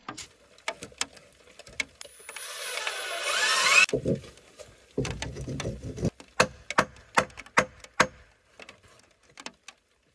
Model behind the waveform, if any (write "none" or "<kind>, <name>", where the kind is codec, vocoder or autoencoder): none